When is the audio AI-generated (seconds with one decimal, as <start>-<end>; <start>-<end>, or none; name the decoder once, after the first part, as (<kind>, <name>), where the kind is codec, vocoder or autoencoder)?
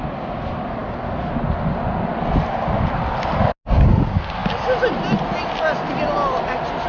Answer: none